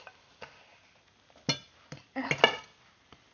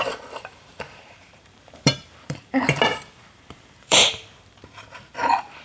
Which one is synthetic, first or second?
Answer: second